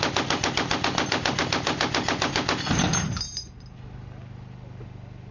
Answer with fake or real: real